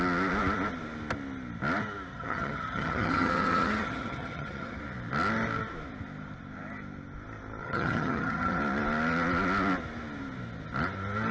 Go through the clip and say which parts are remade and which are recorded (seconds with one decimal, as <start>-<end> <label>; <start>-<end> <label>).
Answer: 0.0-2.1 recorded; 2.1-4.8 remade; 4.8-7.6 recorded; 7.6-8.6 remade; 8.6-11.3 recorded